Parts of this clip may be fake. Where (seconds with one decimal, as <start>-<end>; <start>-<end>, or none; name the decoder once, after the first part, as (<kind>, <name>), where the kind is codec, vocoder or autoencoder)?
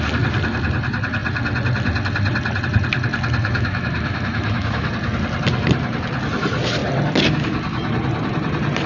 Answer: 3.4-4.9 (autoencoder, DAC-VAE)